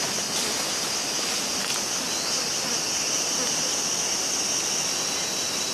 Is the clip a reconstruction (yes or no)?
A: no